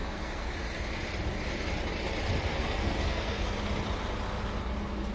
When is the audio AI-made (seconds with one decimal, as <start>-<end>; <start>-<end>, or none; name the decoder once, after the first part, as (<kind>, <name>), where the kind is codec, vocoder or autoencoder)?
0.0-0.5 (codec, SNAC); 2.5-3.5